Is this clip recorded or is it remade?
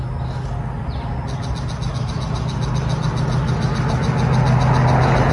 recorded